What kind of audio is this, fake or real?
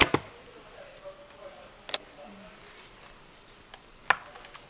real